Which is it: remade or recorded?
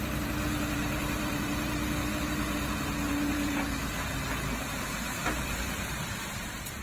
remade